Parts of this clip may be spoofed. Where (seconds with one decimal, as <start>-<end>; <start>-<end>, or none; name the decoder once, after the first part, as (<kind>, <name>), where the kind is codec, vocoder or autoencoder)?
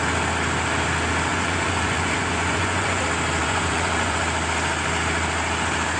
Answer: 1.3-3.0 (vocoder, Vocos); 3.4-4.2